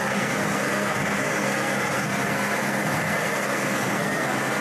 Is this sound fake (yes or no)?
yes